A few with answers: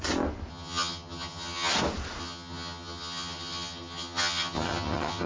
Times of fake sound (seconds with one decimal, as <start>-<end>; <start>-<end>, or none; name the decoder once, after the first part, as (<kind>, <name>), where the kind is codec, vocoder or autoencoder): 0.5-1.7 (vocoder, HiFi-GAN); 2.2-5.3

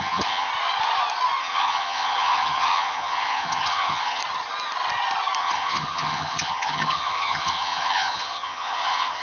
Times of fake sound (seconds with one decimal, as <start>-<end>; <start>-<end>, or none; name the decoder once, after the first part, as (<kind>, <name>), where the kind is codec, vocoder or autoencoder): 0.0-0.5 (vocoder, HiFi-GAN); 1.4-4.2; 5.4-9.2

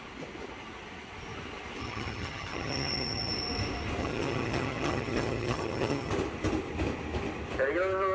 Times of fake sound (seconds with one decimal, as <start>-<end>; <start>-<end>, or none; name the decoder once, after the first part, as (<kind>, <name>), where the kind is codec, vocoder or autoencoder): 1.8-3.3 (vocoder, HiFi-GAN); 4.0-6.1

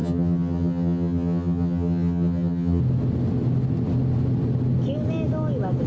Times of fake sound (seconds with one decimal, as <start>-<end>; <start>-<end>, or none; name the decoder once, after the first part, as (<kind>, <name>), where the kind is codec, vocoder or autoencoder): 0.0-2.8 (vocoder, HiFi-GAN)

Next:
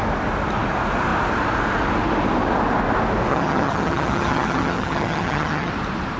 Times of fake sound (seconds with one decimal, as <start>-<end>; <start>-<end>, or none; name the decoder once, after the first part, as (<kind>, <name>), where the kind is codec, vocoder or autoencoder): 3.3-5.7 (vocoder, HiFi-GAN)

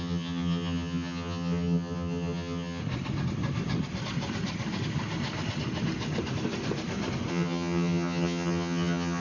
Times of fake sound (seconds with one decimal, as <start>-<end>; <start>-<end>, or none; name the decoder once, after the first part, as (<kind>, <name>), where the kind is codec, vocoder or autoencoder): 0.0-2.8 (vocoder, HiFi-GAN); 7.3-9.2